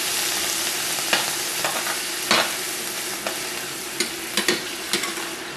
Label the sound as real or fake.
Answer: real